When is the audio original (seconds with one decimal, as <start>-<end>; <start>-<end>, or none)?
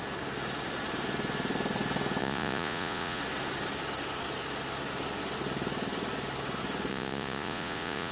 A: 0.0-2.2; 3.2-6.9